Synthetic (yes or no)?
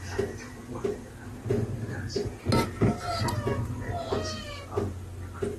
no